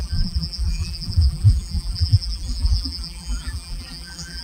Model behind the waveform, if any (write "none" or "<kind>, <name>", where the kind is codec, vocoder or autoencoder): vocoder, BigVGAN v2